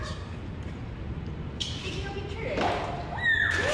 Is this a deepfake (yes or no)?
no